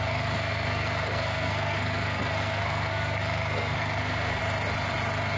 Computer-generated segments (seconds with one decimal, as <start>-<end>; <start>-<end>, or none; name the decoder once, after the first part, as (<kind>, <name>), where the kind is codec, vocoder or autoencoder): 0.0-4.4 (codec, SNAC)